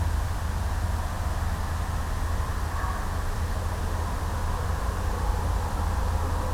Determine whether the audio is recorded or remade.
recorded